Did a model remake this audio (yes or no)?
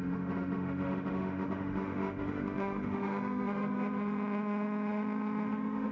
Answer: yes